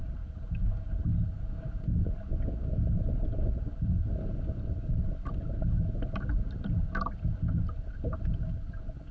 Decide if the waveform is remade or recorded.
recorded